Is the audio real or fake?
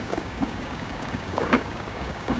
fake